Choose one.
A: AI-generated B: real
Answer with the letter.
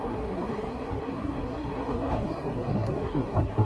A